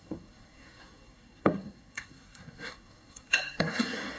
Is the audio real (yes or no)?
no